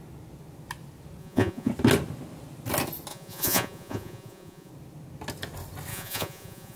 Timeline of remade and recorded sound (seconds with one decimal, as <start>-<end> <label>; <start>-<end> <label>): 0.0-1.2 recorded; 1.2-1.7 remade; 1.7-3.1 recorded; 3.1-4.7 remade; 4.7-5.9 recorded; 5.9-6.8 remade